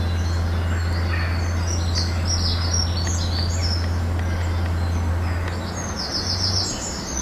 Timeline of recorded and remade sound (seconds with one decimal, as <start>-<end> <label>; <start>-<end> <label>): 0.0-7.2 recorded